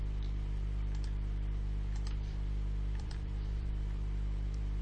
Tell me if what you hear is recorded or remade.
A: remade